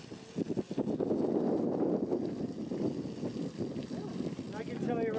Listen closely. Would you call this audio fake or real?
real